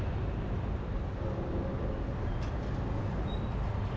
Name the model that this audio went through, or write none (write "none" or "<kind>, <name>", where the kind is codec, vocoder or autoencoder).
none